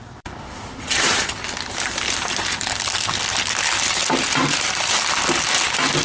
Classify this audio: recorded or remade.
recorded